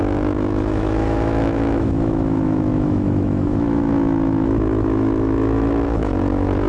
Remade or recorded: remade